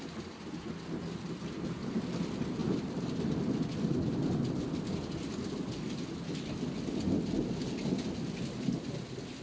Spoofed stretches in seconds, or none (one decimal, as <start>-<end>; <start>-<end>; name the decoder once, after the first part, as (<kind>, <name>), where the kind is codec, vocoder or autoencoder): none